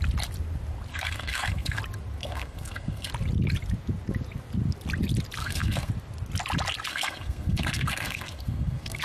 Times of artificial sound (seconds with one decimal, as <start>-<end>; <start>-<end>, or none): 0.9-1.8; 2.2-3.1; 5.4-5.9; 6.9-9.0